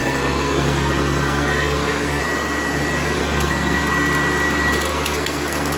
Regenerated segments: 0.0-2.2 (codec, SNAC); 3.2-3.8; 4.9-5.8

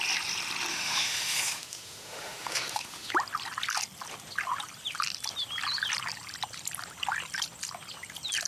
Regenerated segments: 0.7-3.1 (autoencoder, DAC-VAE)

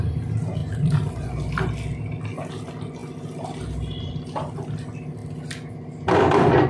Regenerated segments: none

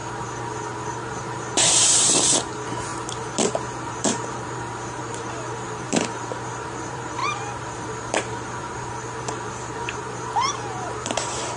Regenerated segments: 1.2-2.9 (vocoder, BigVGAN v2); 3.5-11.6